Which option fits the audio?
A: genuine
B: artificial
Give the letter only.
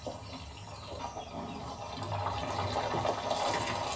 A